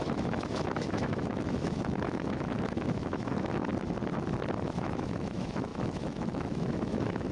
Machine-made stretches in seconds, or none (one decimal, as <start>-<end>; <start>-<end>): 0.0-3.7; 4.6-7.3